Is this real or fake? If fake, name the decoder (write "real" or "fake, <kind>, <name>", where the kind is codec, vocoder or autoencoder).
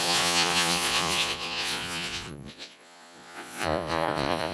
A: fake, vocoder, Vocos